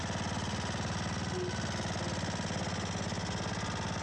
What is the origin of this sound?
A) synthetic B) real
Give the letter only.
B